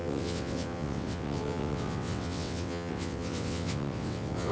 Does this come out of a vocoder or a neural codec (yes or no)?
yes